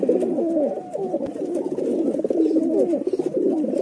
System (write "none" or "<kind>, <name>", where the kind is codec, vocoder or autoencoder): none